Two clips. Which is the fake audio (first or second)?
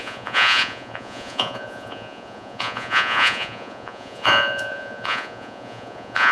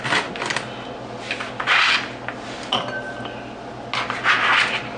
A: first